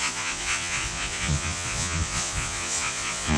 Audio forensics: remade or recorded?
remade